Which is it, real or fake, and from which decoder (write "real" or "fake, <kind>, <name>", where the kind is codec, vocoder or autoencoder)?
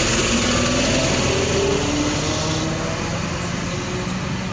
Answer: real